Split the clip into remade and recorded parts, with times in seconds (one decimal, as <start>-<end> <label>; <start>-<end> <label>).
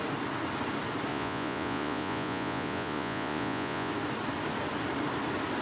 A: 0.0-1.1 recorded; 1.1-3.9 remade; 3.9-5.6 recorded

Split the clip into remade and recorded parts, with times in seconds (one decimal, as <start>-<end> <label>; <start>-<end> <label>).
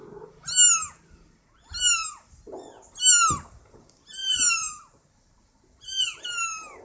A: 0.0-4.2 recorded; 4.2-5.8 remade; 5.8-6.8 recorded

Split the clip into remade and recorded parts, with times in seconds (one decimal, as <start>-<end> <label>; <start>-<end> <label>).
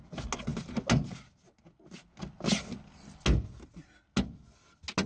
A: 0.0-5.1 recorded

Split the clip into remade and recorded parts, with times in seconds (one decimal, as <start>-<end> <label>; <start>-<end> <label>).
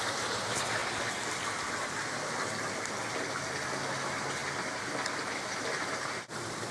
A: 0.0-0.8 remade; 0.8-3.9 recorded; 3.9-6.7 remade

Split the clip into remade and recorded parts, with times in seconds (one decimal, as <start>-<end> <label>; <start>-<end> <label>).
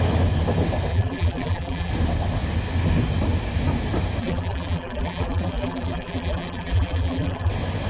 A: 0.0-0.9 recorded; 0.9-1.9 remade; 1.9-4.2 recorded; 4.2-7.5 remade; 7.5-7.9 recorded